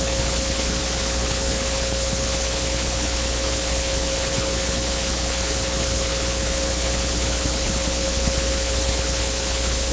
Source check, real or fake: fake